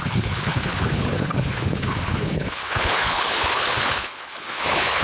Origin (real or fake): fake